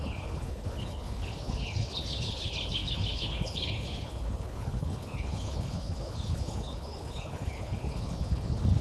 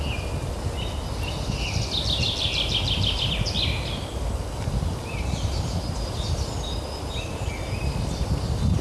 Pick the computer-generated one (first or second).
first